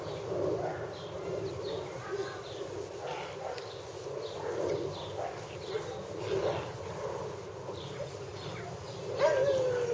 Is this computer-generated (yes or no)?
no